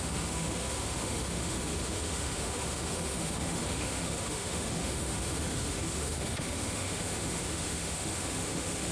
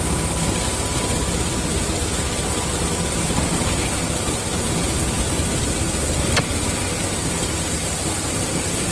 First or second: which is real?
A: second